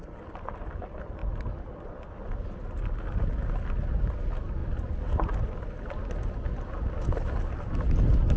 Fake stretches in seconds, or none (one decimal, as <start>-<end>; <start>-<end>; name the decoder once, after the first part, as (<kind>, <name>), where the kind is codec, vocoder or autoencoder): none

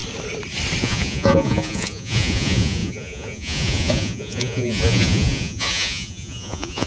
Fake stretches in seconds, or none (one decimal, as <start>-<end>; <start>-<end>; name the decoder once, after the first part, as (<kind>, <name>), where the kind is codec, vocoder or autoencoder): 0.8-6.9 (vocoder, Vocos)

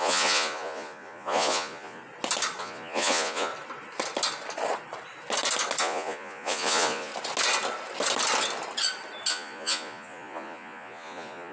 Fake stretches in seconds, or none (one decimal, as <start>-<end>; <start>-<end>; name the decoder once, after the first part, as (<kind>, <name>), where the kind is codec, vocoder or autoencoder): 0.0-2.0 (vocoder, Vocos); 2.6-3.5; 5.8-7.1; 9.3-11.5

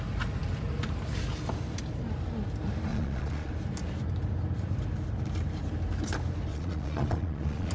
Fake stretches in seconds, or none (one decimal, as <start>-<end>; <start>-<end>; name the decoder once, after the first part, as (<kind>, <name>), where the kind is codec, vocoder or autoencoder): 2.9-3.5 (vocoder, Vocos); 6.5-7.7

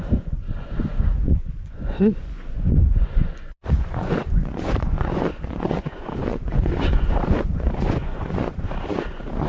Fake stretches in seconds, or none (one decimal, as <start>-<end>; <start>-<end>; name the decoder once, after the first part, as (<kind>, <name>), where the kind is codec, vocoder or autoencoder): 0.0-9.5 (vocoder, Vocos)

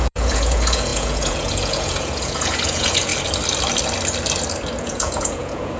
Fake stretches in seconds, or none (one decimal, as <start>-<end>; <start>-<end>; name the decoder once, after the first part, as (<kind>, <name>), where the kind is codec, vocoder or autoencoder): 0.0-3.1 (vocoder, Vocos); 4.8-5.8

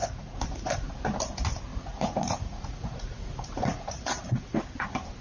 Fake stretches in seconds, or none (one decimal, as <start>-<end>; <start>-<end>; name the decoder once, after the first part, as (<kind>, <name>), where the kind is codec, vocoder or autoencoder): 0.0-0.9 (vocoder, Vocos); 1.7-4.6

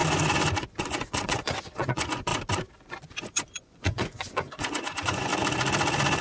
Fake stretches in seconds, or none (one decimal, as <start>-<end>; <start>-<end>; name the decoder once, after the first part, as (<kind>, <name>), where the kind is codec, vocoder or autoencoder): 0.6-2.3 (vocoder, Vocos); 2.8-5.3